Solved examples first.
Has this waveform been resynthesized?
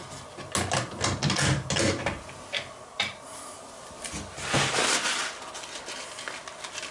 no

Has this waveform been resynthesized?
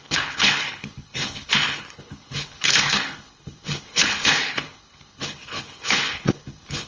yes